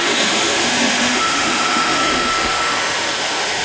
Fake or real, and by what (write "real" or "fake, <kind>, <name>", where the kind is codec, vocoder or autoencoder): fake, autoencoder, DAC-VAE